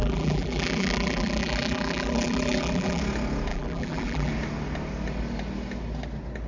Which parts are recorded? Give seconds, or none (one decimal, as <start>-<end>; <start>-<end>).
3.0-3.5; 4.3-6.5

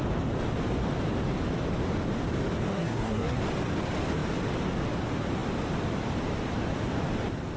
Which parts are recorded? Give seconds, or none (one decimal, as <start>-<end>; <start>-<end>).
0.0-2.7; 3.4-7.6

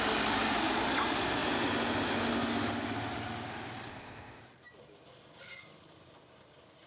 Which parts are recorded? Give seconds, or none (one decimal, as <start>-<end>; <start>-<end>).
0.0-3.9; 4.4-6.9

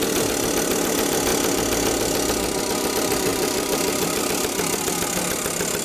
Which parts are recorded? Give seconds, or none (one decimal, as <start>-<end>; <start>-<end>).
0.0-3.3; 4.2-5.8

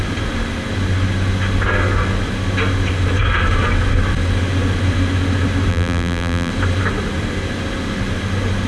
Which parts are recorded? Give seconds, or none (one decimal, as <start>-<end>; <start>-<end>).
0.0-5.7; 6.5-8.7

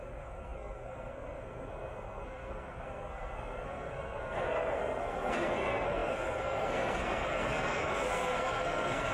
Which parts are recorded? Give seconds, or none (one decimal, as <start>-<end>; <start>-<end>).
none